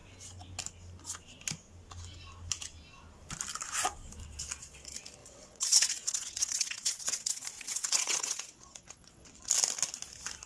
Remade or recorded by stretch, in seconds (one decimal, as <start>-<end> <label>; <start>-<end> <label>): 0.0-5.2 recorded; 5.2-9.5 remade; 9.5-10.5 recorded